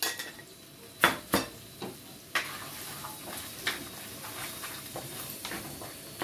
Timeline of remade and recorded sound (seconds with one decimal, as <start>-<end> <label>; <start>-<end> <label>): 0.0-4.4 recorded; 4.4-5.5 remade; 5.5-6.2 recorded